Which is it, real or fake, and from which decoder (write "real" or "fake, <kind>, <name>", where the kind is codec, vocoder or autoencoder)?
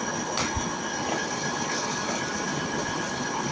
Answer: real